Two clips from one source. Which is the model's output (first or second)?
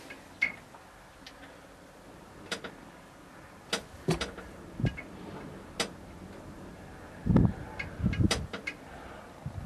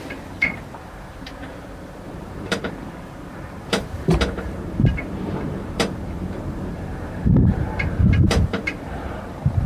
second